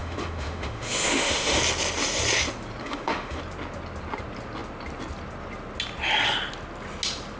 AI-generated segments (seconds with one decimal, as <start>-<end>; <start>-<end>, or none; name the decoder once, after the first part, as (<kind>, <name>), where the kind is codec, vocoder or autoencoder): 0.0-1.6 (autoencoder, DAC-VAE); 2.8-3.4